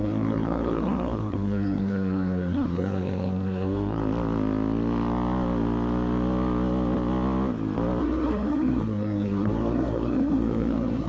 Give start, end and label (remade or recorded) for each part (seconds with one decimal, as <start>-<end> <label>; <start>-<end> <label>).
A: 0.0-4.0 remade; 4.0-8.0 recorded; 8.0-11.1 remade